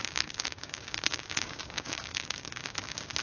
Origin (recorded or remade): remade